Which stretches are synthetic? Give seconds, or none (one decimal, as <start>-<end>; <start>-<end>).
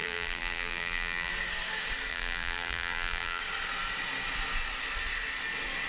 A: 0.0-1.3; 2.1-3.4